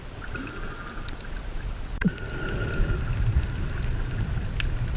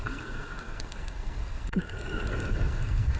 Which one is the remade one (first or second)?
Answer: second